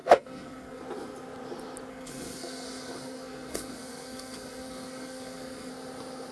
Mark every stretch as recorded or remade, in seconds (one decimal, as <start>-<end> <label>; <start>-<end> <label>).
0.0-0.8 remade; 0.8-1.9 recorded; 1.9-5.7 remade; 5.7-6.3 recorded